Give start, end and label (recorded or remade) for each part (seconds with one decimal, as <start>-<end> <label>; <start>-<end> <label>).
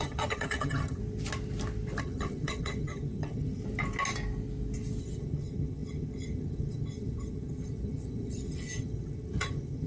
0.0-1.0 remade; 1.0-2.0 recorded; 2.0-3.6 remade; 3.6-5.0 recorded; 5.0-9.9 remade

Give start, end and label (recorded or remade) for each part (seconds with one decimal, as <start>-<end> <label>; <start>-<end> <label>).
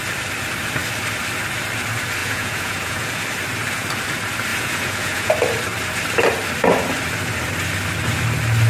0.0-2.2 recorded; 2.2-3.2 remade; 3.2-4.5 recorded; 4.5-5.3 remade; 5.3-8.7 recorded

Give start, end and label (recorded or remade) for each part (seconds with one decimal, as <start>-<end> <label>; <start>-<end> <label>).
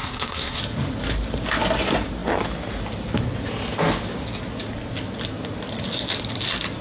0.0-0.6 remade; 0.6-6.8 recorded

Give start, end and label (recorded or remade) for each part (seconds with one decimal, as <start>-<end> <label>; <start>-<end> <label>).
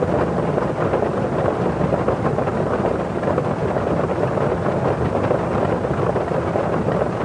0.0-7.2 recorded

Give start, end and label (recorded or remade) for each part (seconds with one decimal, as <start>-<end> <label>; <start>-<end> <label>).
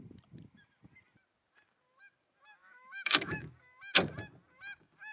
0.0-2.6 recorded; 2.6-3.5 remade; 3.5-5.1 recorded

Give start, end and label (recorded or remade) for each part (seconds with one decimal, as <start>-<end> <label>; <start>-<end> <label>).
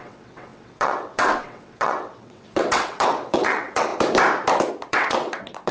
0.0-3.9 remade; 3.9-4.7 recorded; 4.7-5.7 remade